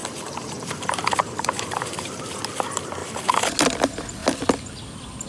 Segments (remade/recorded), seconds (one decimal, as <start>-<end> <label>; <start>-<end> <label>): 0.0-2.2 remade; 2.2-3.0 recorded; 3.0-3.5 remade; 3.5-5.3 recorded